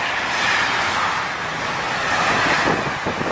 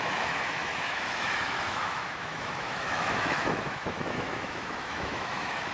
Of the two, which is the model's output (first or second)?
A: second